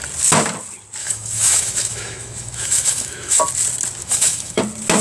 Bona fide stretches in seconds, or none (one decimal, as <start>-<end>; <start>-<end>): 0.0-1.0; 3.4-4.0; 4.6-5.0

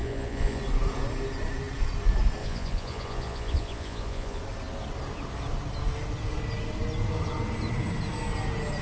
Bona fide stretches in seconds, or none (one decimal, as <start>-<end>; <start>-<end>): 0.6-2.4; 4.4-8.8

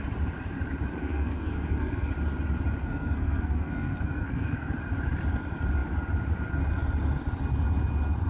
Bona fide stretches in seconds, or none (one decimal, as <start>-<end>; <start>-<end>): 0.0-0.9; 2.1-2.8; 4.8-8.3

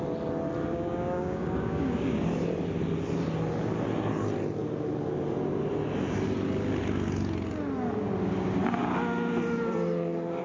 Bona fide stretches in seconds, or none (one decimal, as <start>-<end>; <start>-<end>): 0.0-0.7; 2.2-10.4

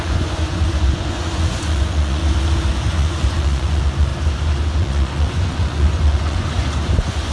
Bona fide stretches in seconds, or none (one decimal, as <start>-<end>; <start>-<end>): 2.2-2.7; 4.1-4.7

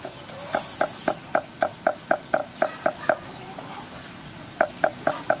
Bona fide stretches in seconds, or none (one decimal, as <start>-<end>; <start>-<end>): 0.0-2.4; 4.3-5.4